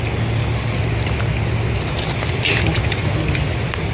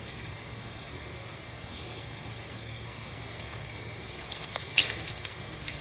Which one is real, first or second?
first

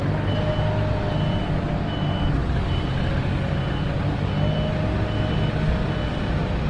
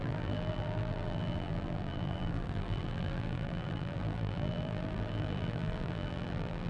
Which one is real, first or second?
first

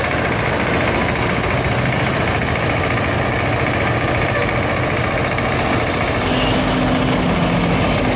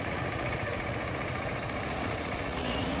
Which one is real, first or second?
first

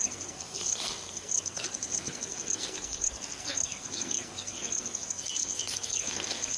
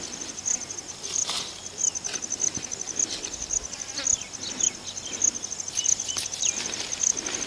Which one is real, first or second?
second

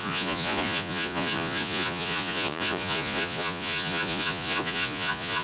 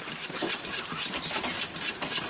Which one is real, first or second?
second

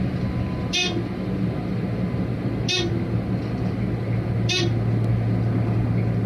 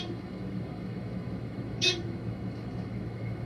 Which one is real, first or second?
first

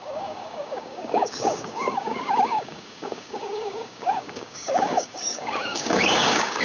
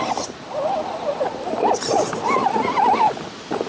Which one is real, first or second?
second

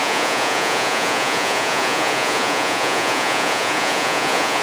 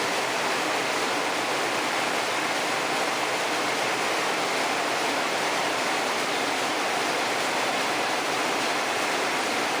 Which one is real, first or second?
second